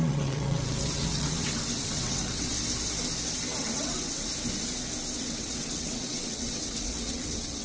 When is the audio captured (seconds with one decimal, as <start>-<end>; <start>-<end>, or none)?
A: 2.5-3.6; 4.3-5.2